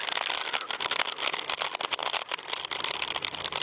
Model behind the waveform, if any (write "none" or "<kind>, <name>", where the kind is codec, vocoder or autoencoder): none